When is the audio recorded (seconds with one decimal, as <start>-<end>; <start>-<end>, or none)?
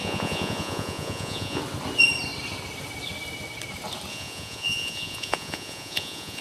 1.6-4.1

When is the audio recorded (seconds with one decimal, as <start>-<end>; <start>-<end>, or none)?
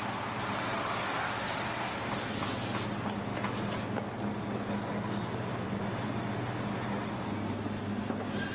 0.0-5.5; 6.2-8.5